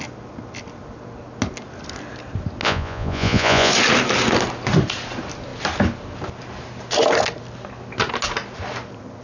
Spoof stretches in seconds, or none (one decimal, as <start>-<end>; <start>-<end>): 2.6-3.7